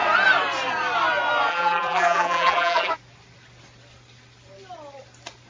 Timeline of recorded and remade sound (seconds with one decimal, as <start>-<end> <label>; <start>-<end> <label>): 0.0-1.5 recorded; 1.5-2.9 remade; 2.9-5.5 recorded